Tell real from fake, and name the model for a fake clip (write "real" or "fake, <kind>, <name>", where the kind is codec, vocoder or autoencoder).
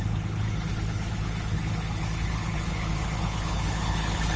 fake, codec, HILCodec